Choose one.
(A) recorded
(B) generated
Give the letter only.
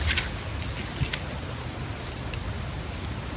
A